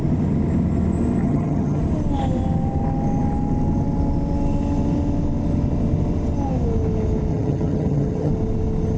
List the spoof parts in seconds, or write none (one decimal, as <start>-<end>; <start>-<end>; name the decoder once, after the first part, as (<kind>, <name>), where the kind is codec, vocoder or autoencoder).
1.2-1.8 (vocoder, HiFi-GAN); 7.3-8.3